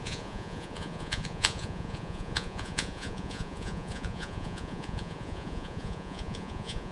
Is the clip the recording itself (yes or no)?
no